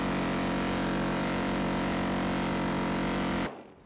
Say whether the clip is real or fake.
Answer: real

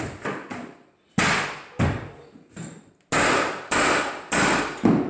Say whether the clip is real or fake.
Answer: real